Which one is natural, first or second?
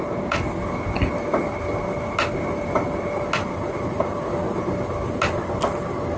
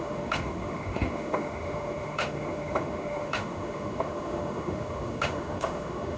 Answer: first